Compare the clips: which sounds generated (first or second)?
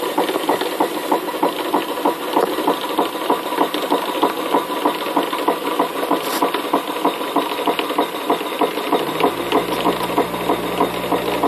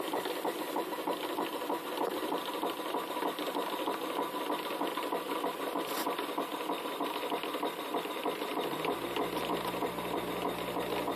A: second